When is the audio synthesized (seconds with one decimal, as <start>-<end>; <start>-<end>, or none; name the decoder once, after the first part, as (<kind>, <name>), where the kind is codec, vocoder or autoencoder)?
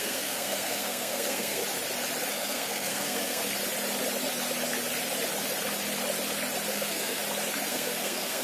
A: 0.0-1.6 (codec, SNAC); 2.3-3.4; 6.7-7.2; 7.7-8.4